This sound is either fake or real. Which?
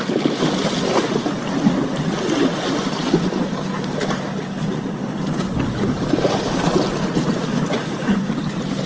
real